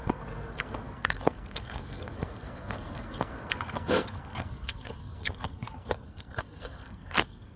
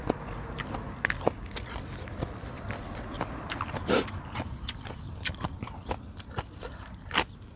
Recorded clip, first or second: second